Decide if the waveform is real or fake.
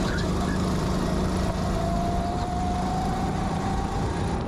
real